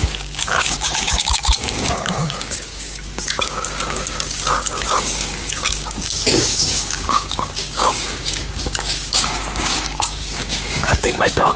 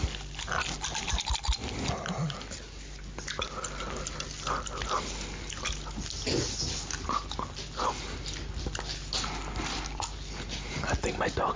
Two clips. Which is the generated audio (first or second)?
first